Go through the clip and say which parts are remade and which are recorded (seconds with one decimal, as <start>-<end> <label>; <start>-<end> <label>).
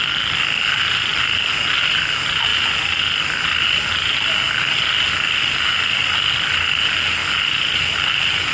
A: 0.0-8.5 recorded